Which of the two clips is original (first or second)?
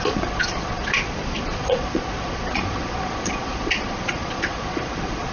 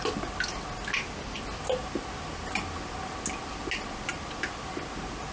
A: second